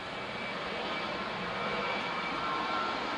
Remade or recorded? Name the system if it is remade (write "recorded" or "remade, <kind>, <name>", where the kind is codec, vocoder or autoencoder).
remade, vocoder, BigVGAN v2